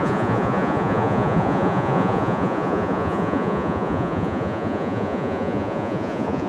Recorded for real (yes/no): no